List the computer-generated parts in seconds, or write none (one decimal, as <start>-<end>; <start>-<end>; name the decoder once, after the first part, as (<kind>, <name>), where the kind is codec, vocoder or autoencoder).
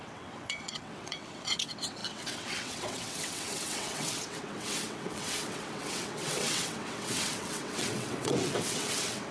0.0-9.3 (vocoder, WaveNeXt)